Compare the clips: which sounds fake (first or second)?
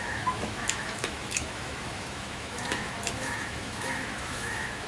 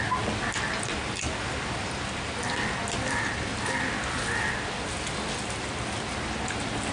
first